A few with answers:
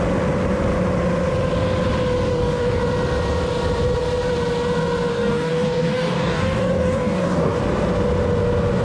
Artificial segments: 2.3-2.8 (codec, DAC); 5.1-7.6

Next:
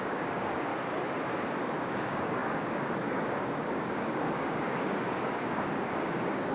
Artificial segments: 0.0-0.7 (codec, DAC); 1.8-6.5